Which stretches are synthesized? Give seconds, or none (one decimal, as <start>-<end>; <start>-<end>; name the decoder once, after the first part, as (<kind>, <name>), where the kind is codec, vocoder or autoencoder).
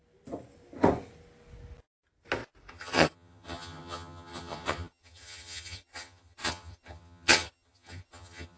2.7-8.6 (vocoder, HiFi-GAN)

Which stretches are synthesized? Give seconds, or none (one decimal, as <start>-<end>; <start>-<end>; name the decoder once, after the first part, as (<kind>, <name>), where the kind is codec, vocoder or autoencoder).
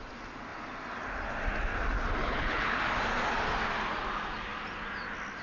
2.2-2.8 (codec, HILCodec)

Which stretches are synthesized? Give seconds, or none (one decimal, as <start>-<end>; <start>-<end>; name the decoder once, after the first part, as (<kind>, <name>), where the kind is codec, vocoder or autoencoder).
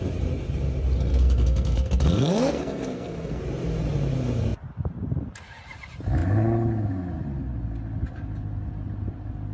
1.1-3.4 (codec, SNAC)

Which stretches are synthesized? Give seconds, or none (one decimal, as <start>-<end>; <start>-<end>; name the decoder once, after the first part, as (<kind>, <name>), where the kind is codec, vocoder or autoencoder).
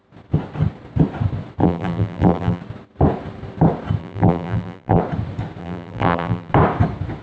1.6-2.6 (vocoder, BigVGAN v2); 4.0-5.0; 5.6-6.5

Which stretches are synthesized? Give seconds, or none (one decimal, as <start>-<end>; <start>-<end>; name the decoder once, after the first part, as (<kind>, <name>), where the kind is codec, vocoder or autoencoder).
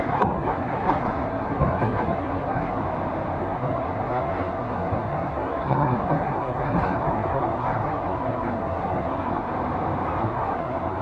0.0-2.8 (codec, SNAC); 3.4-9.5; 10.2-11.0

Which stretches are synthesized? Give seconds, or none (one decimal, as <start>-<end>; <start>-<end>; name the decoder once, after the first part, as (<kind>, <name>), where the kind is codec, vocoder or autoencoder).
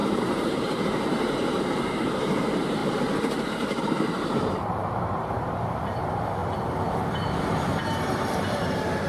0.0-6.4 (vocoder, BigVGAN v2); 6.9-9.1